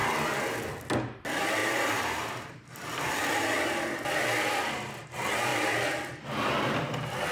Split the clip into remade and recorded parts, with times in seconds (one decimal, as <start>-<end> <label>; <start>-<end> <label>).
0.0-1.6 recorded; 1.6-3.1 remade; 3.1-7.3 recorded